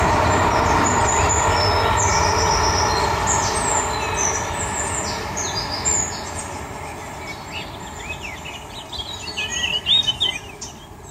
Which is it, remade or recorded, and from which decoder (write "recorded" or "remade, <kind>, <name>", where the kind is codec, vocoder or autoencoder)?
recorded